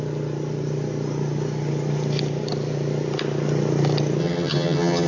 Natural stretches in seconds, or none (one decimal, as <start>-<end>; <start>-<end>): 0.0-4.2